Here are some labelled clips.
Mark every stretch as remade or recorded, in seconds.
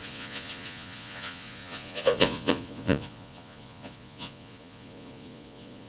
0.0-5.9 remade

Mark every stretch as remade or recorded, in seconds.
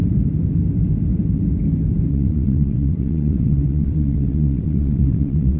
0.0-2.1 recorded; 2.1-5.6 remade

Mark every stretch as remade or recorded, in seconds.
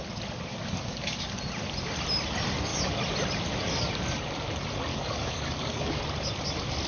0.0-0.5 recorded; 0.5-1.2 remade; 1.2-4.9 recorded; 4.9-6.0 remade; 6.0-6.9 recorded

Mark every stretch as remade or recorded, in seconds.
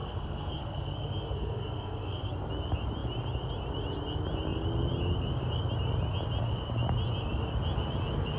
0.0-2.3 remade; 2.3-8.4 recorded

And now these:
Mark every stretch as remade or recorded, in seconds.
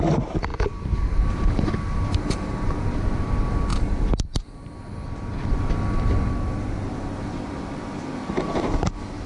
0.0-9.3 recorded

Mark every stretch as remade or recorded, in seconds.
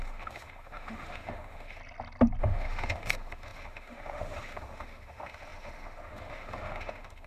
0.0-1.8 remade; 1.8-2.4 recorded; 2.4-7.3 remade